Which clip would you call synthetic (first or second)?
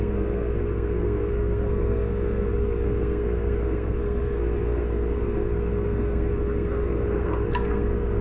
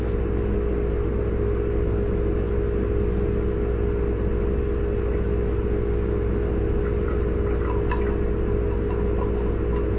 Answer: first